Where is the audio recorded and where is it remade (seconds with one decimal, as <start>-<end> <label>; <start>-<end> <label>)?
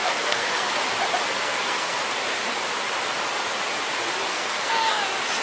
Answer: 0.0-0.8 remade; 0.8-1.3 recorded; 1.3-2.0 remade; 2.0-4.3 recorded; 4.3-5.0 remade; 5.0-5.4 recorded